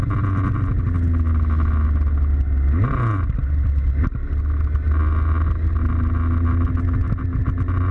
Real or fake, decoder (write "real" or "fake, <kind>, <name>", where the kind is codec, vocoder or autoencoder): real